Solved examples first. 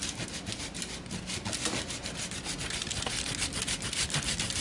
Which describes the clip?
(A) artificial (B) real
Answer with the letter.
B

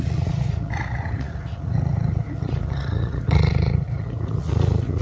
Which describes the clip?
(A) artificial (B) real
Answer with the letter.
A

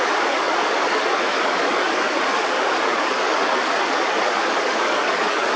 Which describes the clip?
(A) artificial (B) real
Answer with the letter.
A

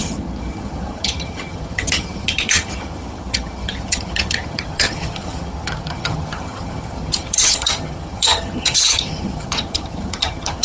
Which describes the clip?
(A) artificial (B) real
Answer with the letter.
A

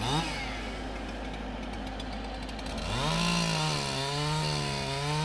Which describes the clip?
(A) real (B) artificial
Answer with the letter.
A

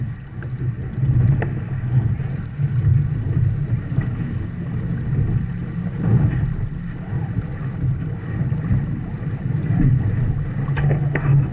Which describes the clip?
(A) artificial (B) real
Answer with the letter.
B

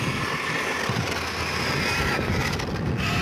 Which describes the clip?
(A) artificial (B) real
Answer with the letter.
B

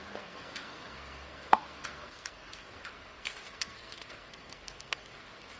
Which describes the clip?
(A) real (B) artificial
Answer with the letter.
B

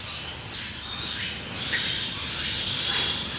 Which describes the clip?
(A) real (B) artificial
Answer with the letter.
A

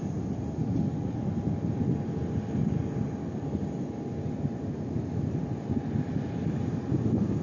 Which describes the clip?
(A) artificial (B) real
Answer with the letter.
B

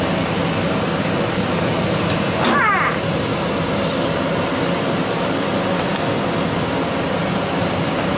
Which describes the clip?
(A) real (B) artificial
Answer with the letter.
A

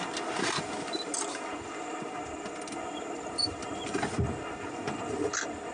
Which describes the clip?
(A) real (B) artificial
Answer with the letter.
A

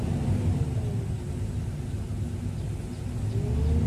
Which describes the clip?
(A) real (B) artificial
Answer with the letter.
A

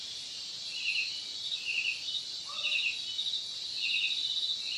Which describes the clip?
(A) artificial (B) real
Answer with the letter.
B